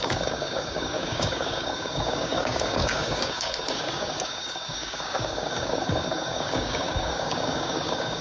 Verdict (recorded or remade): remade